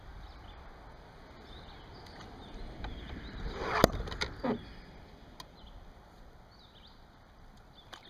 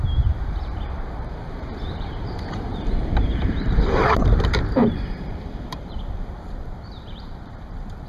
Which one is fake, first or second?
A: second